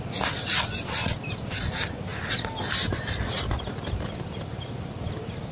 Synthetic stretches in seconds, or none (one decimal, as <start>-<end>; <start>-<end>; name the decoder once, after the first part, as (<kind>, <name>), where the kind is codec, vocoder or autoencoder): none

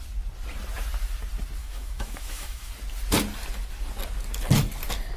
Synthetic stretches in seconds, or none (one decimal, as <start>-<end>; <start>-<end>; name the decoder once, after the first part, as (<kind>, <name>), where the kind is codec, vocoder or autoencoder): 1.6-2.7 (autoencoder, DAC-VAE)

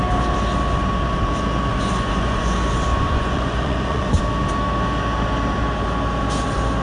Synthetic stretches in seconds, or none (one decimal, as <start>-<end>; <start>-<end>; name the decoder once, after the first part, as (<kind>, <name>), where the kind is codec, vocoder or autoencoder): 1.7-2.5 (vocoder, Vocos); 2.9-4.2

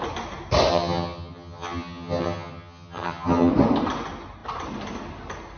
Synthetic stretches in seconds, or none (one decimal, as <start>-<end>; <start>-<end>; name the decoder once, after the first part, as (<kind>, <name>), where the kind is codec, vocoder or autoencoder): 0.7-3.5 (vocoder, HiFi-GAN)

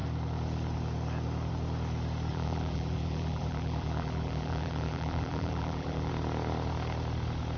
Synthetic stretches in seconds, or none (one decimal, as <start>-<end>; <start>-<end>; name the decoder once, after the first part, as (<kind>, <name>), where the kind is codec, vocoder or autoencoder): 2.3-6.1 (vocoder, BigVGAN v2)

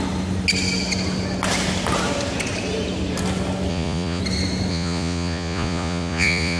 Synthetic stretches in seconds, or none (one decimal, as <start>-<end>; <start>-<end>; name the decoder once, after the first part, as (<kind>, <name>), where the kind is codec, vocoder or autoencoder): 3.7-4.2 (vocoder, Vocos); 4.7-6.6